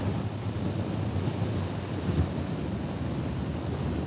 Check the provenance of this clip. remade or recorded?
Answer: recorded